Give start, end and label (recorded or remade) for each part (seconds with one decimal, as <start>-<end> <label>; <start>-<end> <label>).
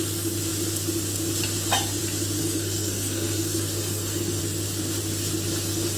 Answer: 0.0-2.4 recorded; 2.4-4.4 remade; 4.4-6.0 recorded